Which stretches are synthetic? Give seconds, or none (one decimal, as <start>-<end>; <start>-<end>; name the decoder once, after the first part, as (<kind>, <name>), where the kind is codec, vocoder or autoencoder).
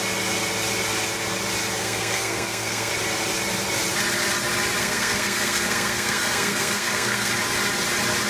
1.8-2.9 (codec, SNAC); 4.8-7.3